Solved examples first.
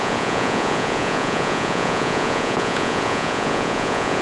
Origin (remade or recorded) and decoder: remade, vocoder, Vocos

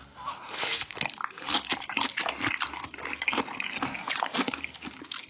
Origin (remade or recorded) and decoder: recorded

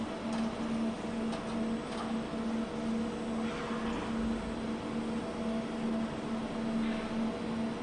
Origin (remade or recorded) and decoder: recorded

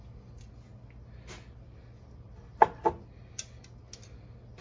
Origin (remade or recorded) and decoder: recorded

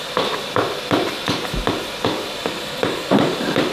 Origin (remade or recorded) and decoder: recorded